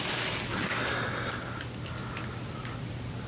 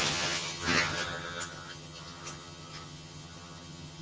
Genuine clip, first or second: first